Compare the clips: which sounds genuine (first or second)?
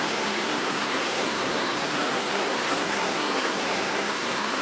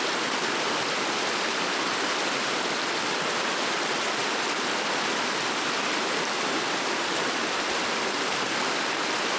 second